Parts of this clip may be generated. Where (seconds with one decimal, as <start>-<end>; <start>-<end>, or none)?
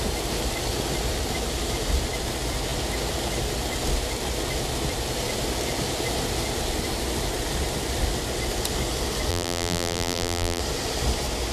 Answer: 9.3-10.6